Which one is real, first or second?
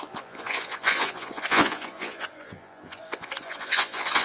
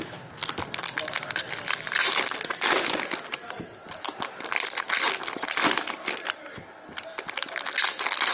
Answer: second